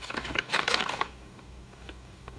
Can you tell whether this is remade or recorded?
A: remade